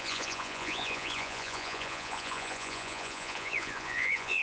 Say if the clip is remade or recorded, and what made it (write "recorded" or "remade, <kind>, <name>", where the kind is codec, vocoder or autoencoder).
remade, vocoder, Vocos